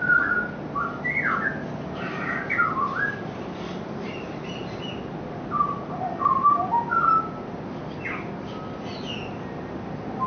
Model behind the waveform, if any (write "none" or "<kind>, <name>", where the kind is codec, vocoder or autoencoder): none